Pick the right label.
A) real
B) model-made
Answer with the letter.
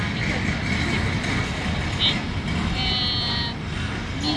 A